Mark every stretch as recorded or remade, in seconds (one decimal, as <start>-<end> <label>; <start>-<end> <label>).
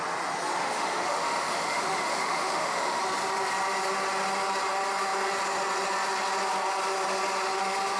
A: 0.0-0.6 recorded; 0.6-3.0 remade; 3.0-8.0 recorded